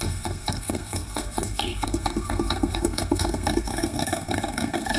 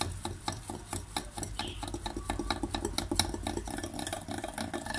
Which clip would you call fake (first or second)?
first